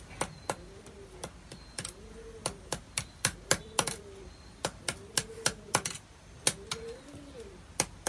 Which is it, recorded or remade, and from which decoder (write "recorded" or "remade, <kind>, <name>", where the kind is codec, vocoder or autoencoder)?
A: recorded